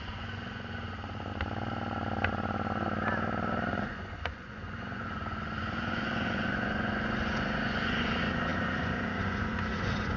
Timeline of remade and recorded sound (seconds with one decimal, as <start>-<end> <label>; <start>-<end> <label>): 0.0-1.3 remade; 1.3-3.7 recorded; 3.7-10.2 remade